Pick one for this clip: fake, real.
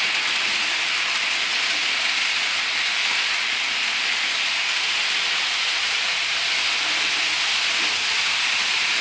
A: real